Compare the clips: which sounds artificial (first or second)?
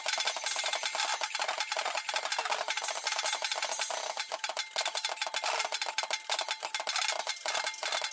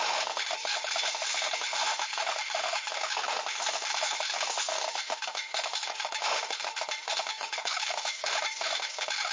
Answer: second